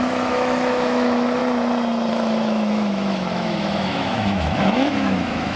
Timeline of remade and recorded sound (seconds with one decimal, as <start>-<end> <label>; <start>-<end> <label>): 0.0-1.4 remade; 1.4-2.1 recorded; 2.1-5.6 remade

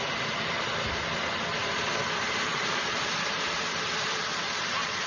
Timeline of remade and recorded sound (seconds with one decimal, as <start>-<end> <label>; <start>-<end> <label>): 0.0-1.6 recorded; 1.6-5.1 remade

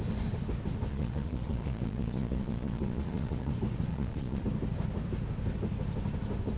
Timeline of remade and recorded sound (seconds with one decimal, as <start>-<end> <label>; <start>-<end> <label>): 0.0-0.9 recorded; 0.9-3.5 remade; 3.5-3.9 recorded; 3.9-4.4 remade; 4.4-6.6 recorded

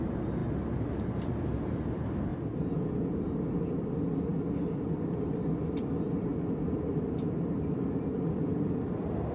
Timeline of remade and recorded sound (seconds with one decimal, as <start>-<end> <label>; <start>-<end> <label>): 0.0-9.3 recorded